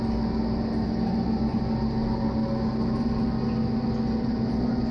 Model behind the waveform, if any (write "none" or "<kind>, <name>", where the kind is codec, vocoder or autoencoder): none